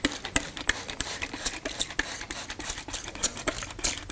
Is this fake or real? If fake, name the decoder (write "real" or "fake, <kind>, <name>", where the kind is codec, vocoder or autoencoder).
real